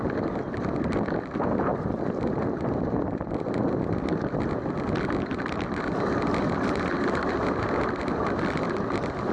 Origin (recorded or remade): recorded